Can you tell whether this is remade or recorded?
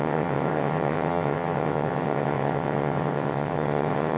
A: remade